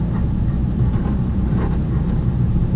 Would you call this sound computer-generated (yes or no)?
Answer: yes